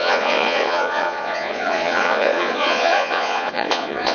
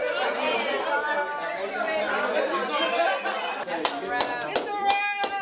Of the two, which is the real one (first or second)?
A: second